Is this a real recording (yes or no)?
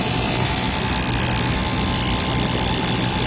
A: yes